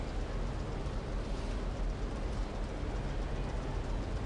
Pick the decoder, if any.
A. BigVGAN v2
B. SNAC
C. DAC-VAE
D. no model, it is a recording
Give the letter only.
D